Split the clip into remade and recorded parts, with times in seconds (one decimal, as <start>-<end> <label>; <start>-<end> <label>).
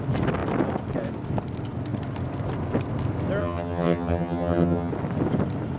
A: 0.0-3.4 recorded; 3.4-4.9 remade; 4.9-5.8 recorded